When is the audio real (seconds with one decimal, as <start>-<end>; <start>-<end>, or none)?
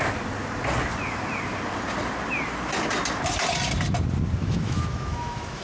0.0-4.4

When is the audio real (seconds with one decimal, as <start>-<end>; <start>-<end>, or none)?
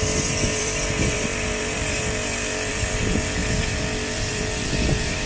0.0-0.5; 3.0-3.4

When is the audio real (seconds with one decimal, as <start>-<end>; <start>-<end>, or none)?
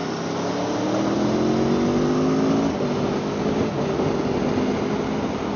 0.0-5.6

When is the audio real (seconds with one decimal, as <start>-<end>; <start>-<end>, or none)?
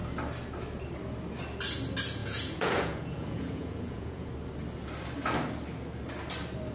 0.0-2.2; 4.3-6.7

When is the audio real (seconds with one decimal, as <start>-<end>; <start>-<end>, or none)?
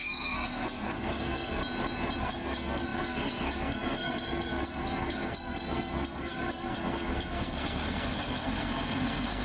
1.6-2.2